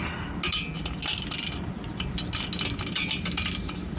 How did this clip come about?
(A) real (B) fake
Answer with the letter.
A